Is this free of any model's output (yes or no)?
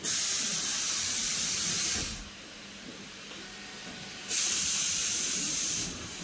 no